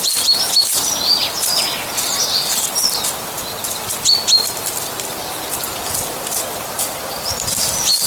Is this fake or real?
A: real